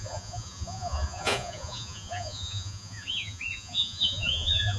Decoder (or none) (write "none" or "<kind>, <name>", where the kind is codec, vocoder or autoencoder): vocoder, Vocos